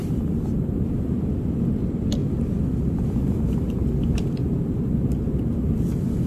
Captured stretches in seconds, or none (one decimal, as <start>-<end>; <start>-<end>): 0.0-6.3